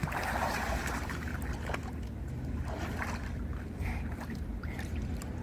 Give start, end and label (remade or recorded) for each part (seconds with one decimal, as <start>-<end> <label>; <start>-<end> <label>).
0.0-1.3 remade; 1.3-4.3 recorded; 4.3-5.4 remade